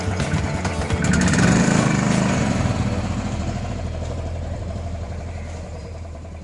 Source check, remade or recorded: remade